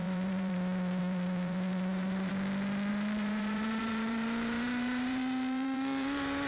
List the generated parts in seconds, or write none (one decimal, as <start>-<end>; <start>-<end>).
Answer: 0.0-2.3; 2.9-6.5